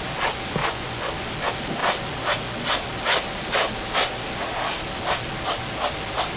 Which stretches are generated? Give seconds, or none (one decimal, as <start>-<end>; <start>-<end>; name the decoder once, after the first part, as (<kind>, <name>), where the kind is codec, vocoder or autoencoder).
0.6-1.1 (vocoder, Vocos)